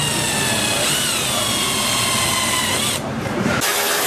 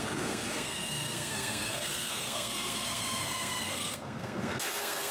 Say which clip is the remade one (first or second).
second